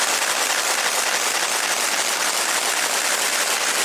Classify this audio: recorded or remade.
recorded